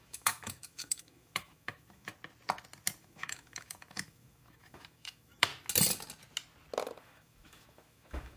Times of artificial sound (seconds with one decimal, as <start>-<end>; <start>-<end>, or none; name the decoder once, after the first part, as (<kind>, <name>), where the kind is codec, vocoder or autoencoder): 0.0-2.1 (autoencoder, DAC-VAE); 3.0-5.5; 7.0-8.4